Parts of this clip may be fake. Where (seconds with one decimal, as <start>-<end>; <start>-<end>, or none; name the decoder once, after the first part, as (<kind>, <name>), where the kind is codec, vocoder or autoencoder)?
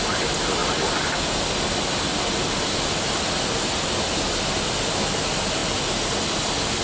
none